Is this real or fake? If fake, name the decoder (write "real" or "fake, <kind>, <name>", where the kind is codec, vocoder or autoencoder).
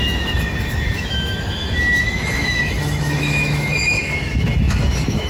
fake, autoencoder, DAC-VAE